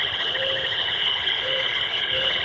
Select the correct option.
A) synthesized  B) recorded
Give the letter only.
A